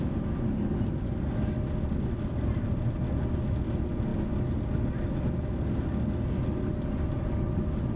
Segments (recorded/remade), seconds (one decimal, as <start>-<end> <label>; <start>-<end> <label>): 0.0-8.0 recorded